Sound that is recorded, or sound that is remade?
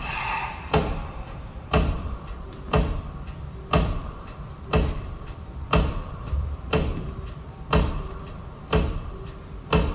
remade